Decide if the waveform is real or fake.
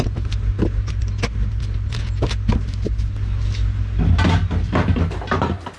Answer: real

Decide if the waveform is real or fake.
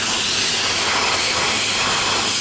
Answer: real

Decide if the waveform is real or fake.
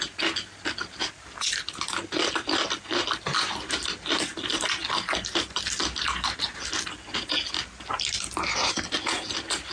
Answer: real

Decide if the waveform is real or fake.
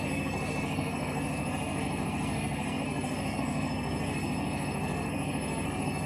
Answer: fake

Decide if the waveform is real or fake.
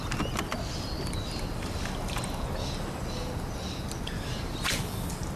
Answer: real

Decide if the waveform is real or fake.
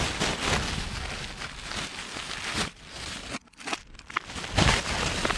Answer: real